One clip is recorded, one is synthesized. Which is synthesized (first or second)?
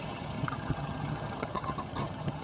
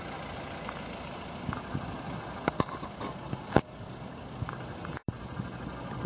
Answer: first